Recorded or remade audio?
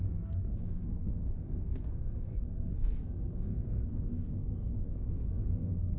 remade